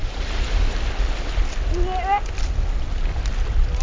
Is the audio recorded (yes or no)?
yes